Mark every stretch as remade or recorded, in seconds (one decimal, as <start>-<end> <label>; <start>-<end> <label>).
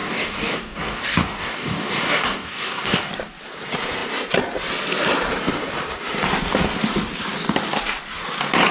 0.0-3.1 remade; 3.1-8.7 recorded